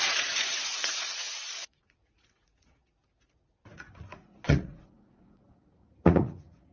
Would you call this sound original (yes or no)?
no